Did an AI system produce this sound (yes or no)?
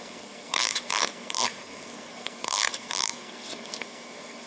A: yes